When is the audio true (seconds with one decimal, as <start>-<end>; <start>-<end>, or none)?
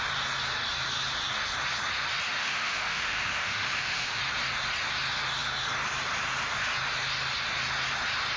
0.0-2.4; 4.2-8.4